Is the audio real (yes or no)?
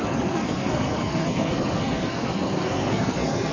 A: no